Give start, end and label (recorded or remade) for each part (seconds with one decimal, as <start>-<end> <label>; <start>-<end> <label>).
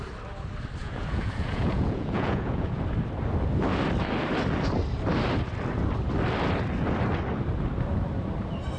0.0-0.8 recorded; 0.8-2.8 remade; 2.8-8.8 recorded